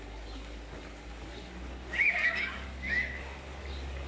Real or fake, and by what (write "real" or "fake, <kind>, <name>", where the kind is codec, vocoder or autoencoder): fake, codec, DAC